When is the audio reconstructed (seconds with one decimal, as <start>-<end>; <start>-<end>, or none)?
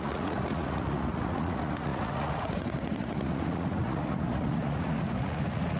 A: 0.0-5.8